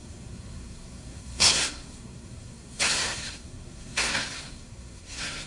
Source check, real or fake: fake